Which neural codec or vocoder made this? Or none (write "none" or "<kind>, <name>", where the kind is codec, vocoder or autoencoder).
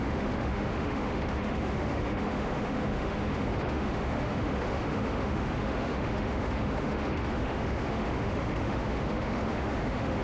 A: autoencoder, DAC-VAE